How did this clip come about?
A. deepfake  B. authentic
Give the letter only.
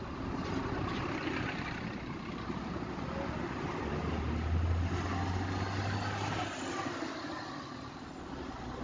B